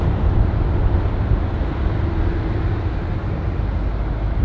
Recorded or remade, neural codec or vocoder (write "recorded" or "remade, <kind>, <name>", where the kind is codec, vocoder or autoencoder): recorded